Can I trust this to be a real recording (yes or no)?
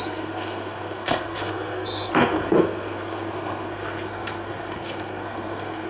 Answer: no